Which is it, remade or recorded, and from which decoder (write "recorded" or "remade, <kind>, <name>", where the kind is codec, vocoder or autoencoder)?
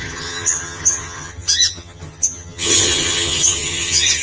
remade, vocoder, HiFi-GAN